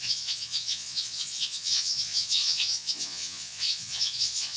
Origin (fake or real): fake